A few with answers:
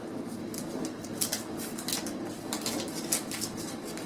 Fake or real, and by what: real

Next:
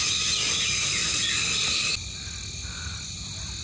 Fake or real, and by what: real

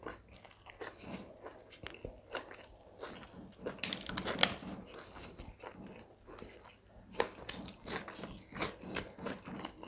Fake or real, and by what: real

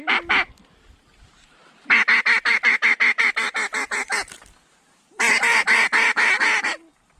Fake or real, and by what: fake, vocoder, BigVGAN v2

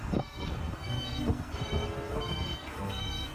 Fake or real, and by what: fake, codec, SNAC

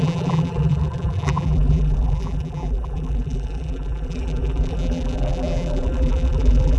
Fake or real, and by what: fake, vocoder, BigVGAN v2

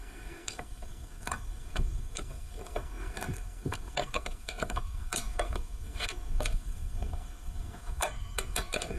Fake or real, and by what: fake, codec, SNAC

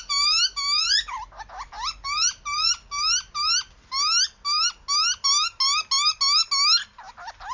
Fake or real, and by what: real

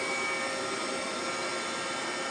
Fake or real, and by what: real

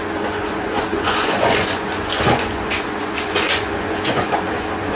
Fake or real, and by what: fake, vocoder, Vocos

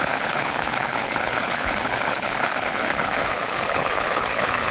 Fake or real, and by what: fake, codec, HILCodec